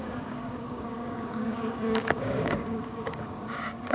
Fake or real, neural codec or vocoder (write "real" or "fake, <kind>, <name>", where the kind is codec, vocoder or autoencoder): fake, codec, DAC